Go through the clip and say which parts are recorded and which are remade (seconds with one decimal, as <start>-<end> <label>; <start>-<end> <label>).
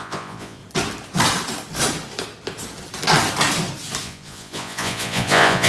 0.0-0.6 remade; 0.6-4.0 recorded; 4.0-5.7 remade